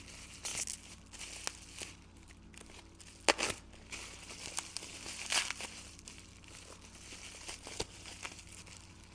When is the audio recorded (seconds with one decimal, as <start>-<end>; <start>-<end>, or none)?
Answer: 0.5-5.6